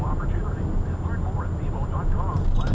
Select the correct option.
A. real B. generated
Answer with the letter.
A